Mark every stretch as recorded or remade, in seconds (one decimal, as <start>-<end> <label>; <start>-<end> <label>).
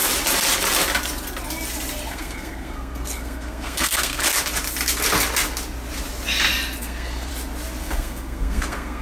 0.0-2.1 recorded; 2.1-4.2 remade; 4.2-6.8 recorded; 6.8-7.3 remade; 7.3-7.8 recorded; 7.8-9.0 remade